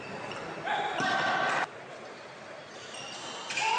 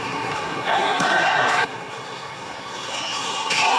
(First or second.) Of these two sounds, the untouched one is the first